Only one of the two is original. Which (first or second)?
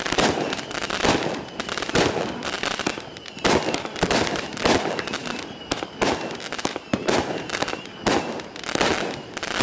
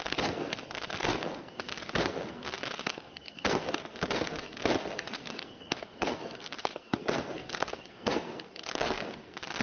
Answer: first